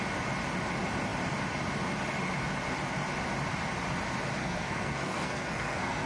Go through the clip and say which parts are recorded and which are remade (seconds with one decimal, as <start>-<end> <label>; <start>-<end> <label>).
0.0-4.4 recorded; 4.4-6.1 remade